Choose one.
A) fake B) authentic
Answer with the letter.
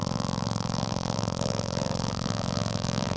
A